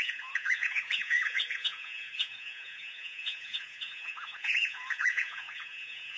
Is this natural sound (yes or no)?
no